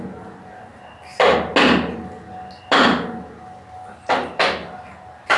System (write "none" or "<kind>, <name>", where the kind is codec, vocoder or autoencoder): none